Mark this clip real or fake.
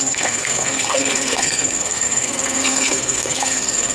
fake